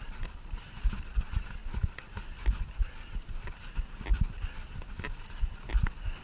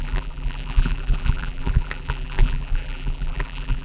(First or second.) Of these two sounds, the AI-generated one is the second